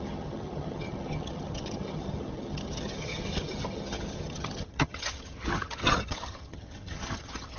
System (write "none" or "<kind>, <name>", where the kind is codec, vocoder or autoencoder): vocoder, HiFi-GAN